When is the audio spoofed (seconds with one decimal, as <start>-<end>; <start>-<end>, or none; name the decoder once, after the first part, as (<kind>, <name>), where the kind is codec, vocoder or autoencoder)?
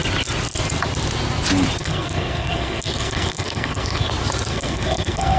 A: 1.8-4.1 (codec, SNAC); 4.5-5.4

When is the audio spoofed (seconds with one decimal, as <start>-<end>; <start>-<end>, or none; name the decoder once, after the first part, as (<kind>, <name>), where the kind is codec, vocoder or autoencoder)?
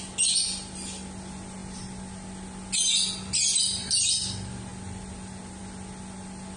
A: none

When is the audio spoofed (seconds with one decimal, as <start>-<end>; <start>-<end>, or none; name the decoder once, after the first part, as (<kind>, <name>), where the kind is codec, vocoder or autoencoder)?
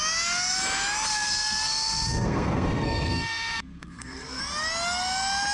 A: 1.1-4.4 (codec, SNAC)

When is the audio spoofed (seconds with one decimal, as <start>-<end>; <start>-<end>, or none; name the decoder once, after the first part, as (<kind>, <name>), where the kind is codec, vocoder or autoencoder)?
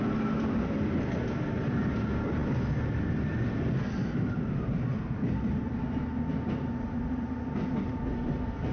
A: none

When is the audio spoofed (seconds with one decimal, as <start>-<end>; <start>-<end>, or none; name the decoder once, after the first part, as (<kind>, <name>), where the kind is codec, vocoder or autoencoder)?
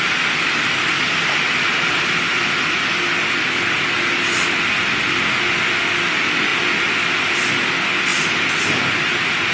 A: none